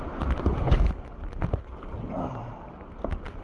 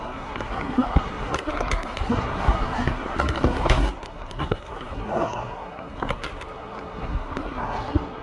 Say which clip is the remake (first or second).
second